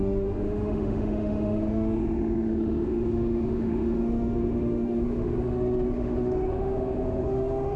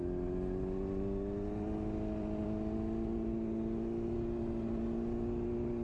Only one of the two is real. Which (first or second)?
second